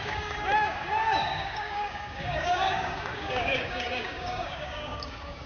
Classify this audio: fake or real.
fake